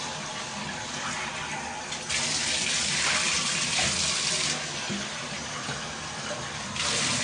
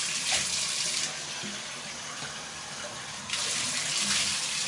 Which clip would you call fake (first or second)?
second